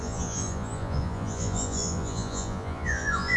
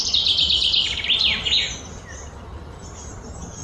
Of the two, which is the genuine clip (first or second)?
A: second